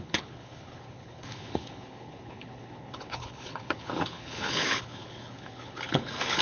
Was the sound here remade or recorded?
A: remade